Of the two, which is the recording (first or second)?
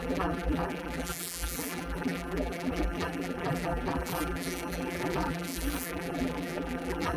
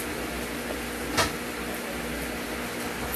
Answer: second